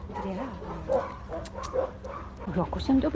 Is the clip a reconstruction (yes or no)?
no